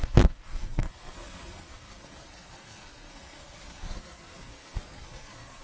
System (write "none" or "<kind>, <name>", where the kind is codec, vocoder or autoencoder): codec, SNAC